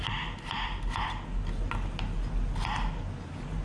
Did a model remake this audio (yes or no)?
no